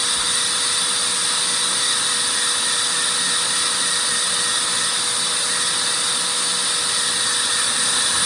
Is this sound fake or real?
real